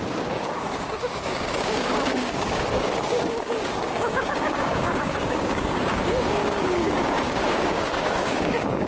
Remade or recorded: remade